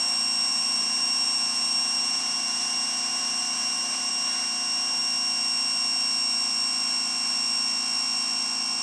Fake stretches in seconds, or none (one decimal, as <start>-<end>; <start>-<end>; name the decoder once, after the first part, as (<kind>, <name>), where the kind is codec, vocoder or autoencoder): 0.5-4.1 (vocoder, BigVGAN v2)